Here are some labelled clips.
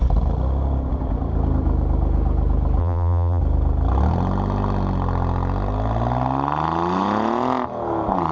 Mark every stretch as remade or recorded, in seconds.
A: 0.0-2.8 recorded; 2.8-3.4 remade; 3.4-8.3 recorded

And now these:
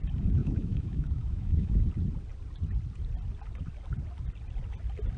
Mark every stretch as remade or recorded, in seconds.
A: 0.0-0.4 recorded; 0.4-1.8 remade; 1.8-5.2 recorded

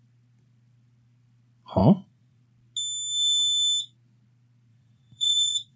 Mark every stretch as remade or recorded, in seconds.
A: 0.0-1.8 recorded; 1.8-2.4 remade; 2.4-4.7 recorded; 4.7-5.8 remade

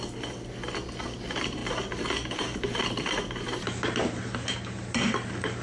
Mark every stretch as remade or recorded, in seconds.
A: 0.0-5.6 recorded

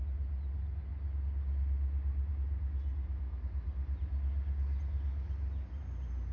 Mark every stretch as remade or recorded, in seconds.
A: 0.0-6.3 recorded

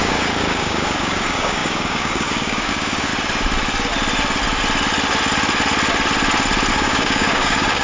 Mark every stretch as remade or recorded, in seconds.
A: 0.0-3.1 remade; 3.1-6.7 recorded; 6.7-7.8 remade

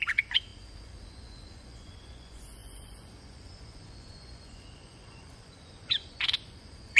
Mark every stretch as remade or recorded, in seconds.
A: 0.0-7.0 remade